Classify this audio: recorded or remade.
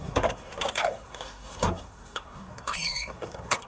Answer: remade